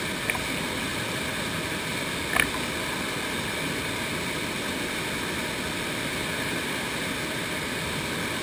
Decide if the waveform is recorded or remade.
recorded